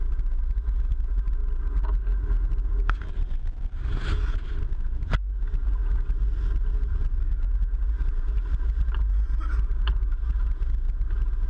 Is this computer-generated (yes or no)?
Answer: no